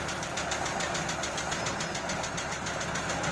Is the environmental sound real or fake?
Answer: real